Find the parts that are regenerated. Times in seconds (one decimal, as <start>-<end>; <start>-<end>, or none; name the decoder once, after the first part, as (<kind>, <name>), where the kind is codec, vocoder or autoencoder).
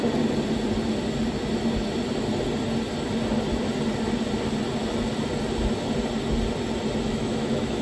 7.1-7.8 (autoencoder, DAC-VAE)